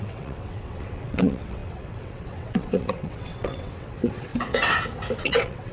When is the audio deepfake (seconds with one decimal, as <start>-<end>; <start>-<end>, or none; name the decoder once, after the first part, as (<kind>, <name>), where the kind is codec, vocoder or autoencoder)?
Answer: 0.0-4.3 (vocoder, WaveNeXt); 5.2-5.7